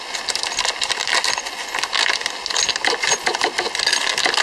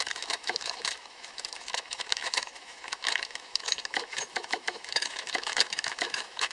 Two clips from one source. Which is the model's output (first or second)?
second